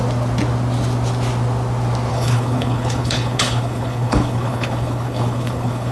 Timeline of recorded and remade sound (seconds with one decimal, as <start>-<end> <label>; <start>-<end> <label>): 0.0-2.1 recorded; 2.1-5.9 remade